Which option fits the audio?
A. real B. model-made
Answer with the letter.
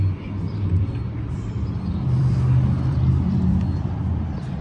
B